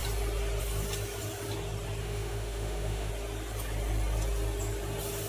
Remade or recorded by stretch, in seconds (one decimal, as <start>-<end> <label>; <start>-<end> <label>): 0.0-2.0 recorded; 2.0-3.1 remade; 3.1-5.3 recorded